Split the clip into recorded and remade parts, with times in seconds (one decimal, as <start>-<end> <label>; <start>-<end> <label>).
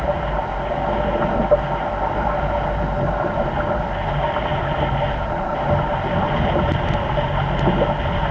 0.0-8.3 recorded